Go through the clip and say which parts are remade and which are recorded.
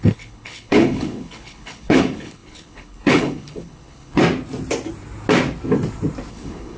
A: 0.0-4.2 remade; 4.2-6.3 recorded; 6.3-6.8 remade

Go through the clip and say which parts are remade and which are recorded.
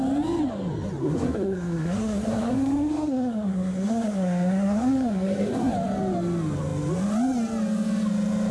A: 0.0-1.0 recorded; 1.0-5.7 remade; 5.7-8.5 recorded